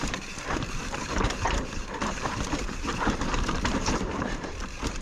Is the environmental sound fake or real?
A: fake